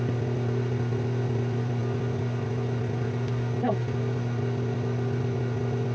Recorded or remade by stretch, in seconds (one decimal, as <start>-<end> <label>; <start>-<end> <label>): 0.0-5.9 recorded

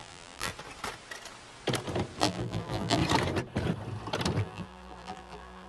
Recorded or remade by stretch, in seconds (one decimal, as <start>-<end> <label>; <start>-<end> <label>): 0.0-0.5 remade; 0.5-2.2 recorded; 2.2-3.0 remade; 3.0-4.4 recorded; 4.4-5.7 remade

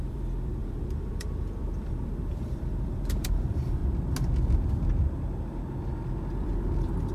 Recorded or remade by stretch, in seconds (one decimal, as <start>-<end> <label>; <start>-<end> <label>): 0.0-3.8 remade; 3.8-6.3 recorded; 6.3-7.1 remade

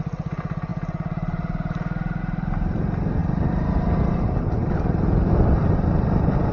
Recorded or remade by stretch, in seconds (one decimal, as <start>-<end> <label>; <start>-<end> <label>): 0.0-6.5 recorded

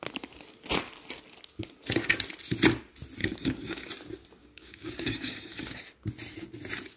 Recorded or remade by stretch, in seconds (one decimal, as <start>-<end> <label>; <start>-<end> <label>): 0.0-3.2 recorded; 3.2-3.9 remade; 3.9-4.4 recorded; 4.4-5.8 remade; 5.8-7.0 recorded

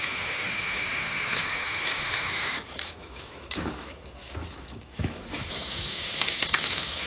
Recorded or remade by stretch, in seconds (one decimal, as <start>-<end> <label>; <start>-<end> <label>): 0.0-7.1 remade

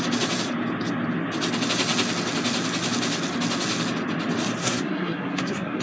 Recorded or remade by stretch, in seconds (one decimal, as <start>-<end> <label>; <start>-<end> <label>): 0.0-4.6 recorded; 4.6-5.8 remade